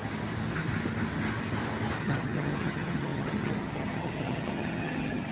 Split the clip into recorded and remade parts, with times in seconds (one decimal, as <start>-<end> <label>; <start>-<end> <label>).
0.0-2.0 recorded; 2.0-5.3 remade